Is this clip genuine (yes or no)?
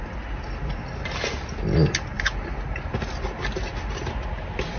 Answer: yes